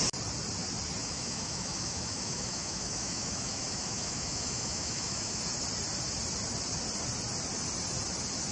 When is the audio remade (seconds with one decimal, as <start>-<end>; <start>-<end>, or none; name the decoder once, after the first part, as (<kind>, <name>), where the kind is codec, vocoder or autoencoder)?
1.0-5.4 (autoencoder, DAC-VAE)